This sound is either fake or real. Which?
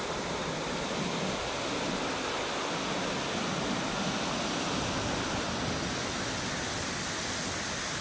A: real